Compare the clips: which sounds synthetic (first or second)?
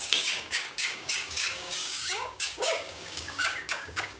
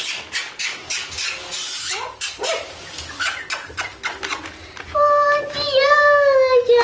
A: first